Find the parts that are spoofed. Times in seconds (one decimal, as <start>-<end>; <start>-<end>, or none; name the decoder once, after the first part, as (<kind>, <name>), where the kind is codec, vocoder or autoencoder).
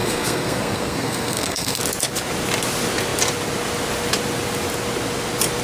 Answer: 0.0-1.8 (codec, SNAC)